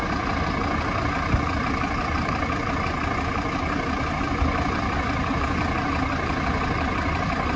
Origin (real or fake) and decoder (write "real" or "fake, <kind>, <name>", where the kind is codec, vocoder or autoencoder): real